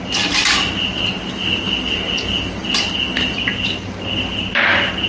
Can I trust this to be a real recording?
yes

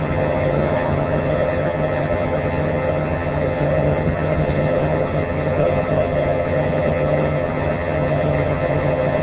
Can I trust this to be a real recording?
no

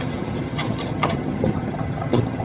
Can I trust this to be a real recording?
no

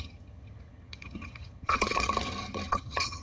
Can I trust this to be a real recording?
no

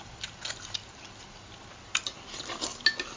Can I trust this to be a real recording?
yes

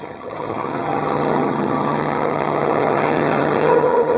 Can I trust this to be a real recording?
no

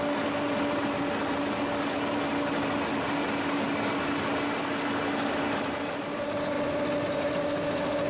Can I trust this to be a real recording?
yes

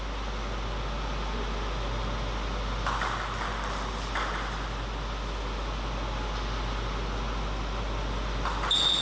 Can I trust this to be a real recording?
yes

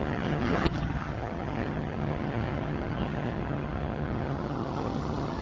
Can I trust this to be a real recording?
no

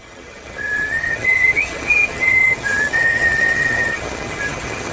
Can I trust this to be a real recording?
no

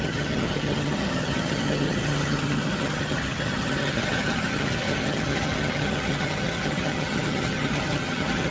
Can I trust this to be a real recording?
no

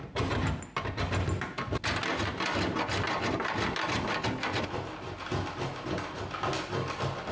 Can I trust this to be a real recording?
yes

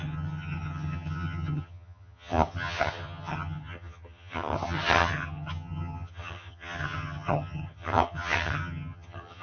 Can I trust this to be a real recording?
no